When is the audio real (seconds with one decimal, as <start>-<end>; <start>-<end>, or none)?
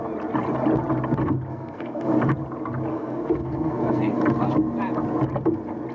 0.0-1.5; 2.1-2.9; 4.2-5.9